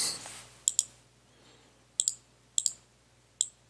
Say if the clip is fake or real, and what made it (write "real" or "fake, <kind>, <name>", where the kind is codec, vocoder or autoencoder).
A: real